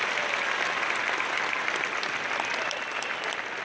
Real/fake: real